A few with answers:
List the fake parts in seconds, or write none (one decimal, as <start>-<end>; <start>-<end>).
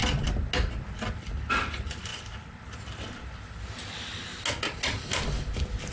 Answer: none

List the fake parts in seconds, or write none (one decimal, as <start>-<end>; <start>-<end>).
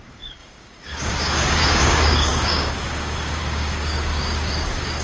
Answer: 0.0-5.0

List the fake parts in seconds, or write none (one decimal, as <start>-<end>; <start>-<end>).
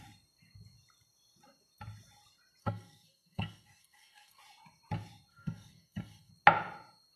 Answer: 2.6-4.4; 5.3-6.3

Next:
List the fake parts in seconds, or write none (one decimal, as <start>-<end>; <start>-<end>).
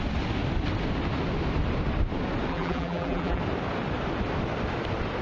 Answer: 2.5-3.4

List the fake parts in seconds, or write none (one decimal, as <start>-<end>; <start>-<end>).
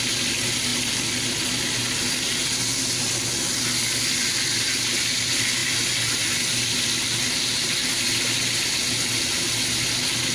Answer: none